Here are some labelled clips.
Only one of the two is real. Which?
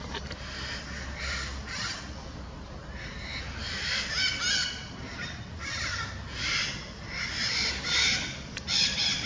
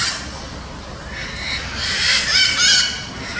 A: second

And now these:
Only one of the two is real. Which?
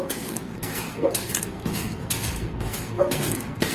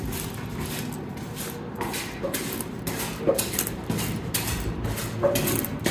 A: second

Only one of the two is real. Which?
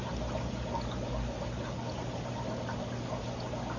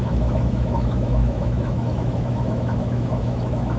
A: first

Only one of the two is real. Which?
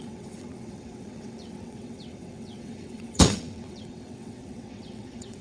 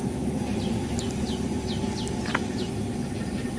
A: second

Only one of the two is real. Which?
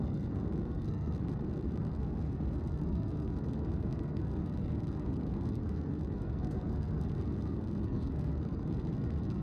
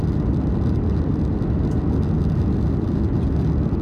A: second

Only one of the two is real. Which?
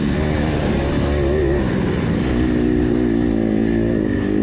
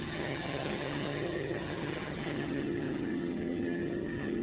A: first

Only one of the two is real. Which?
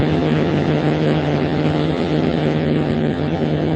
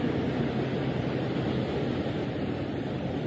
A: second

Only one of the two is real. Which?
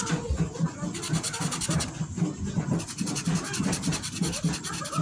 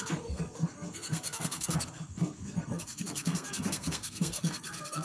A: first